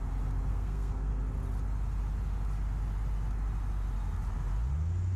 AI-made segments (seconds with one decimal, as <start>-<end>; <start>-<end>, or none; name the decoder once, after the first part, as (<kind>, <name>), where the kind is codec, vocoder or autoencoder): 0.5-1.1 (codec, SNAC)

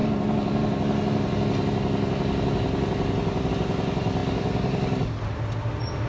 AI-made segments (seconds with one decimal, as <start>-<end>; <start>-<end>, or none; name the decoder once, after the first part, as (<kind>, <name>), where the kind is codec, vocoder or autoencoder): none

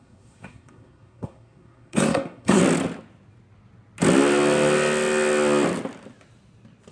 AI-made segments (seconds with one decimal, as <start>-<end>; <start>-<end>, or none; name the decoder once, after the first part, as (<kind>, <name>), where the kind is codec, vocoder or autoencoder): 0.0-2.6 (codec, SNAC)